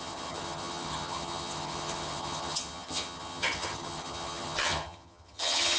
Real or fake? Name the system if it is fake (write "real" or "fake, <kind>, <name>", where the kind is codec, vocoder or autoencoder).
fake, vocoder, HiFi-GAN